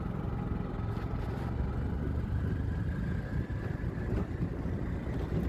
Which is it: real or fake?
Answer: real